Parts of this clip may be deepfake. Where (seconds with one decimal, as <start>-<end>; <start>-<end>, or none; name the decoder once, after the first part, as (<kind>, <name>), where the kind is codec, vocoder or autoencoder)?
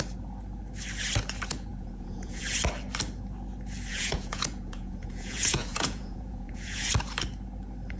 1.7-2.4 (vocoder, Vocos); 3.9-6.9